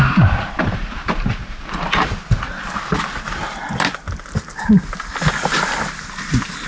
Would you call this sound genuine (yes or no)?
yes